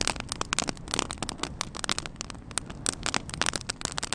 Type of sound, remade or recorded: recorded